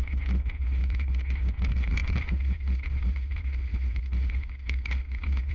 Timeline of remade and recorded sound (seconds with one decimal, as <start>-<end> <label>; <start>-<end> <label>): 0.0-5.5 remade